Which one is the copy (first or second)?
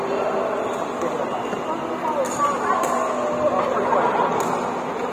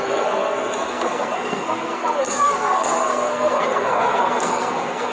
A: second